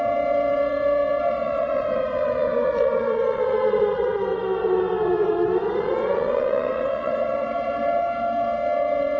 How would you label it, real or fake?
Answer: fake